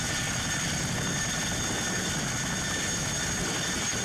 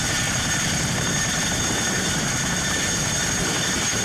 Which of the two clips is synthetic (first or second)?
second